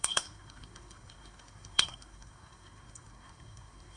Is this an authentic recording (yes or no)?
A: no